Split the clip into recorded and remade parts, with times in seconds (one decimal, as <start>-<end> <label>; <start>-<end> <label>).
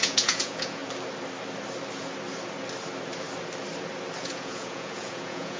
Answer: 0.0-0.8 remade; 0.8-4.2 recorded; 4.2-5.6 remade